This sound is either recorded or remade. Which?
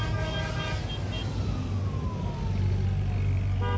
recorded